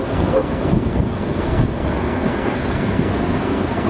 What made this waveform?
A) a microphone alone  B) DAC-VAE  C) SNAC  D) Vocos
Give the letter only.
C